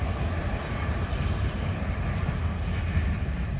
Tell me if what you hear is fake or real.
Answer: real